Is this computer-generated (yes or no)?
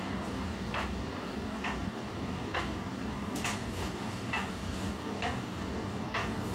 yes